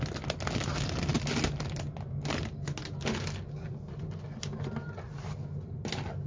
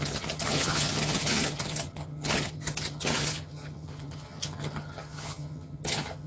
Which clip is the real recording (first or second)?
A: first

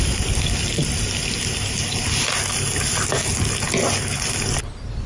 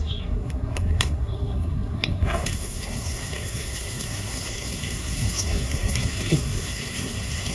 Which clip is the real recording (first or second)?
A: first